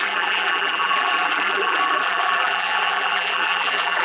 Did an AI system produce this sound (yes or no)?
yes